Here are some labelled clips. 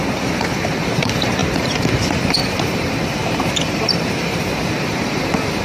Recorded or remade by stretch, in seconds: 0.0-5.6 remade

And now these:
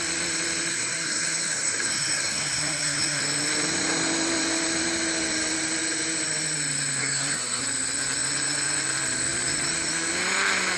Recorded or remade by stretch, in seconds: 0.0-0.7 recorded; 0.7-3.2 remade; 3.2-7.0 recorded; 7.0-7.6 remade; 7.6-10.8 recorded

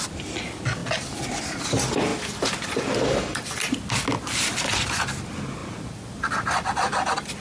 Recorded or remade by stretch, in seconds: 0.0-7.4 recorded

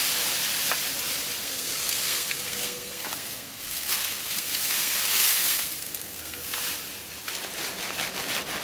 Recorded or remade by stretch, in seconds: 0.0-1.4 recorded; 1.4-6.5 remade; 6.5-8.6 recorded

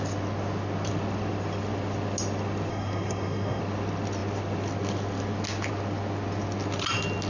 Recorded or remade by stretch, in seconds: 0.0-2.7 recorded; 2.7-3.6 remade; 3.6-7.3 recorded

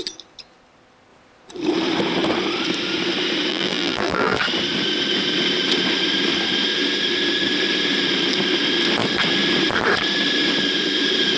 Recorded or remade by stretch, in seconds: 0.0-3.5 recorded; 3.5-4.4 remade; 4.4-11.4 recorded

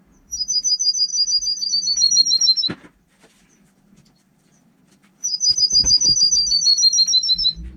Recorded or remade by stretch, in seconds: 0.0-1.1 remade; 1.1-1.7 recorded; 1.7-6.7 remade; 6.7-7.8 recorded